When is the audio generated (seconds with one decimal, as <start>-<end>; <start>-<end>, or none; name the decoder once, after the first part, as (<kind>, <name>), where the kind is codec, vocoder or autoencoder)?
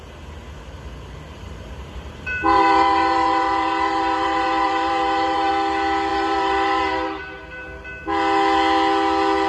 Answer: 1.3-5.5 (vocoder, BigVGAN v2); 6.1-7.2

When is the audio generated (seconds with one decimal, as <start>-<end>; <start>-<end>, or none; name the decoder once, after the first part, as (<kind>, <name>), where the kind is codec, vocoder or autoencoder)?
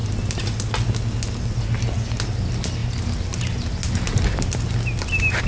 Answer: none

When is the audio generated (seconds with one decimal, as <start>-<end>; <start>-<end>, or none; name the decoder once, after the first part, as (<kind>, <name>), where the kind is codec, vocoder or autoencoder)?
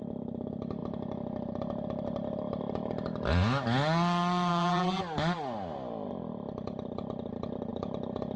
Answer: 4.5-5.0 (vocoder, BigVGAN v2)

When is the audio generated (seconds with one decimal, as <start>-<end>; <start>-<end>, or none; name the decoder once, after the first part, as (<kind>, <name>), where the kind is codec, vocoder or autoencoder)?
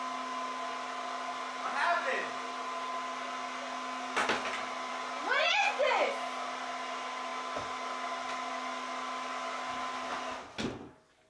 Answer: none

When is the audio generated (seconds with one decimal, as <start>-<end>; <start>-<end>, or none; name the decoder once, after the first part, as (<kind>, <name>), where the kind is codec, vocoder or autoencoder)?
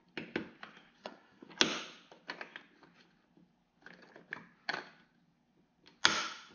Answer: 1.0-1.5 (codec, SNAC)